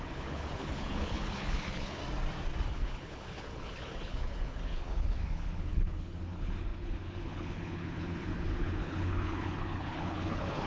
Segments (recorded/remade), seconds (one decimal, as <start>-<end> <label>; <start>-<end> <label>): 0.0-2.0 remade; 2.0-2.7 recorded; 2.7-10.7 remade